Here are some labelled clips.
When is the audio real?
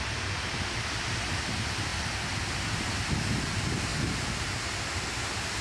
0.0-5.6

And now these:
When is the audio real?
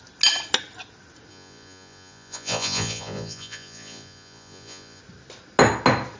0.0-1.3; 5.0-6.2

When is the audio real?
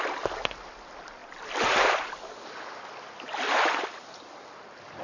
0.0-5.0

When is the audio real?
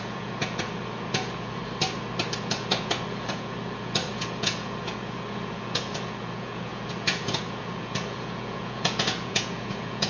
1.6-2.4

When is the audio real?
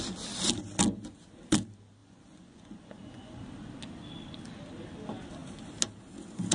0.0-2.0; 3.4-6.5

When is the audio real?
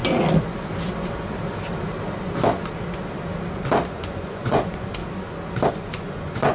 0.0-3.9; 5.0-5.7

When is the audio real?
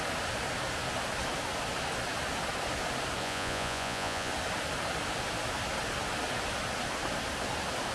0.0-3.2; 4.3-7.9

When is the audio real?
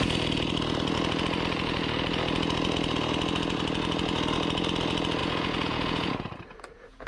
0.0-5.2